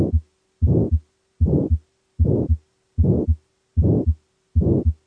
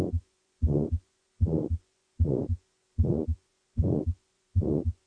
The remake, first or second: second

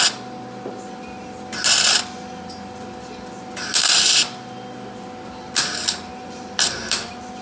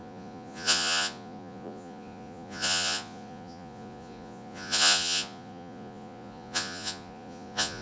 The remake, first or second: second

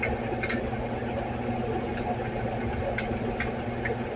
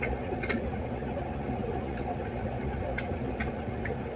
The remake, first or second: second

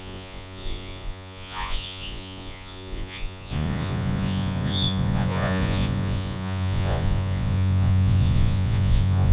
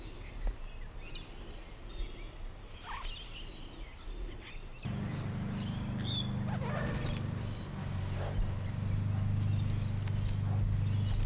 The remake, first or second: first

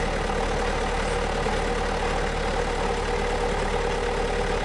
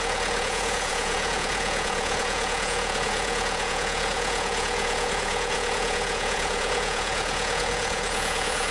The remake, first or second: second